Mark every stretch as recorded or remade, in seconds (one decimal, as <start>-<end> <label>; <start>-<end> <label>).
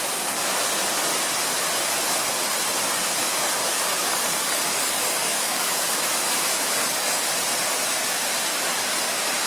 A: 0.0-3.6 recorded; 3.6-5.9 remade; 5.9-6.8 recorded; 6.8-7.3 remade; 7.3-9.5 recorded